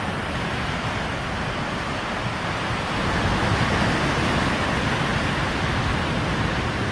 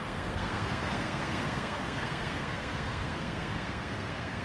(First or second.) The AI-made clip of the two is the second